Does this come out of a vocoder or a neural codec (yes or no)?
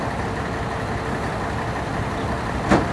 no